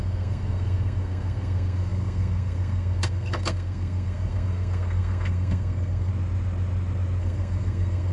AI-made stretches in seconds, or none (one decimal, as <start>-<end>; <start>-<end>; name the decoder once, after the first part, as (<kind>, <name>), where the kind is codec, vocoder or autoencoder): 0.0-6.1 (codec, SNAC); 7.2-8.1